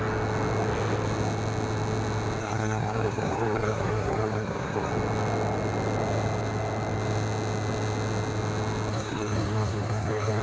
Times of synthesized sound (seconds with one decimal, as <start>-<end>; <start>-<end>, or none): 2.4-4.9; 8.9-10.4